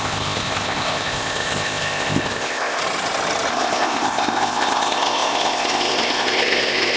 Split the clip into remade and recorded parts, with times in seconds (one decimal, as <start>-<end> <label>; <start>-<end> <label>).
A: 0.0-2.8 remade; 2.8-3.5 recorded; 3.5-7.0 remade